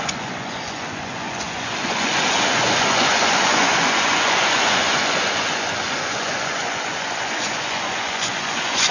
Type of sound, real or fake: fake